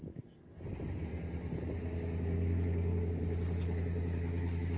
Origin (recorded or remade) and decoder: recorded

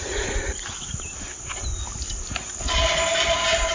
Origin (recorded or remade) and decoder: remade, vocoder, BigVGAN v2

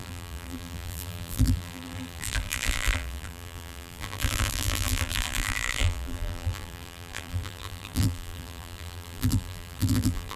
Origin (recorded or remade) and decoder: remade, vocoder, BigVGAN v2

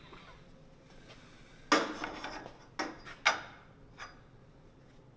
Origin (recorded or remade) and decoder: recorded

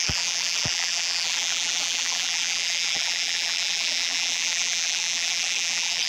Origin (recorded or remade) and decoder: remade, vocoder, BigVGAN v2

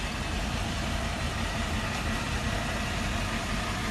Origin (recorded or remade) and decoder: remade, vocoder, BigVGAN v2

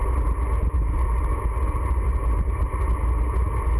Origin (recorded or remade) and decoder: recorded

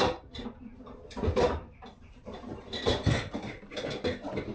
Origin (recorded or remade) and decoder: remade, vocoder, BigVGAN v2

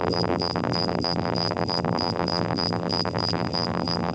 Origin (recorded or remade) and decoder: remade, vocoder, BigVGAN v2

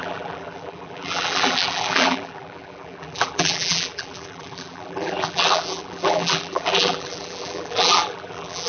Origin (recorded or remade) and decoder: remade, vocoder, BigVGAN v2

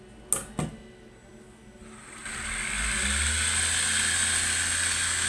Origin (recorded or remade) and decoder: recorded